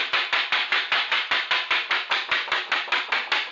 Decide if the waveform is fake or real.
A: real